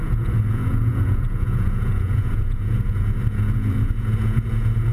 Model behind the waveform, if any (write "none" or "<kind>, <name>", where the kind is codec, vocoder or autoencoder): vocoder, Vocos